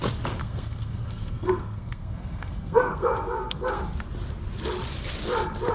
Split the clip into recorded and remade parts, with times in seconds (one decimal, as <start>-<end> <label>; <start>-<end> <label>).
0.0-0.4 recorded; 0.4-3.8 remade; 3.8-5.7 recorded